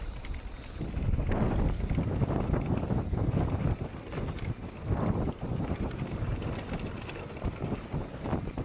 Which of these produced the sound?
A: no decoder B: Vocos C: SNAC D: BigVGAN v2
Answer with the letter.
A